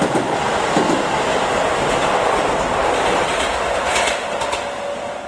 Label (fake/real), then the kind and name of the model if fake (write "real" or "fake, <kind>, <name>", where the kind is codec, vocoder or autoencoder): real